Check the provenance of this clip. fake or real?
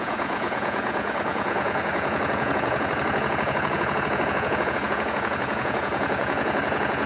fake